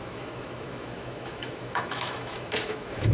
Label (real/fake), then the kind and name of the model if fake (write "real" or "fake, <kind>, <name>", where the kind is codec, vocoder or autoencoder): fake, autoencoder, DAC-VAE